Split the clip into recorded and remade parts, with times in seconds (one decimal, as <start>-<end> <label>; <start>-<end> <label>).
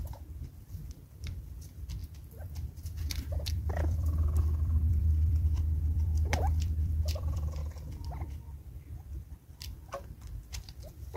0.0-11.2 remade